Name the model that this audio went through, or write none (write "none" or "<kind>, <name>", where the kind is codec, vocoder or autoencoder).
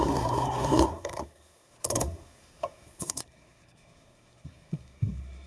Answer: codec, SNAC